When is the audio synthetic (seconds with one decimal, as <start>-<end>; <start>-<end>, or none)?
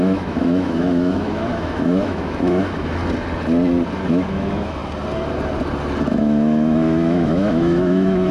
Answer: 0.0-3.0; 4.1-4.8; 6.0-8.3